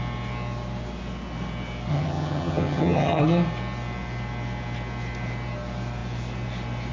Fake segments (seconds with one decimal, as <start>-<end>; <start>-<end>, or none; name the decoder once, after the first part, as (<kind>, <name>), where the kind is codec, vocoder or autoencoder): 1.9-3.2 (vocoder, HiFi-GAN)

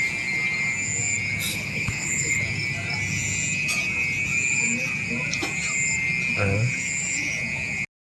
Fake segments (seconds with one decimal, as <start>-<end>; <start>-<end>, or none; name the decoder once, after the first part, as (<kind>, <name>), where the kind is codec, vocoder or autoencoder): 1.5-2.4 (codec, HILCodec)

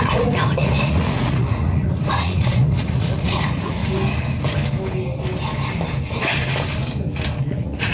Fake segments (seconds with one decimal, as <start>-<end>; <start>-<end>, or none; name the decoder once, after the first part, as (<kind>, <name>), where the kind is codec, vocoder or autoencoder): 0.0-3.8 (vocoder, Vocos); 7.4-7.9